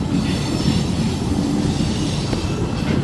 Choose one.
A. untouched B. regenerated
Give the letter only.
A